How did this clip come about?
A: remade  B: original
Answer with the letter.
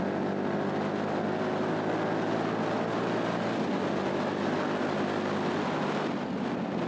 B